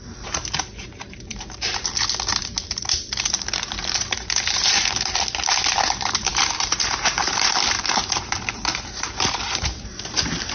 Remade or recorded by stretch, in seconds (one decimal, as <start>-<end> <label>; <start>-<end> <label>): 0.0-10.5 remade